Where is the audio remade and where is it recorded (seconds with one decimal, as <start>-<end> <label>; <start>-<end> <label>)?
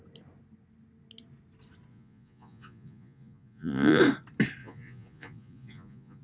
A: 0.0-1.9 recorded; 1.9-4.0 remade; 4.0-4.6 recorded; 4.6-6.2 remade